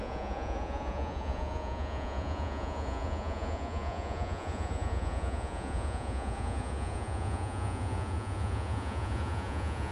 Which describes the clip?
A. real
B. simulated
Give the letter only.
B